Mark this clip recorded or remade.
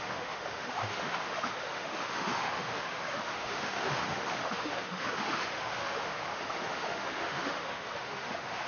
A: remade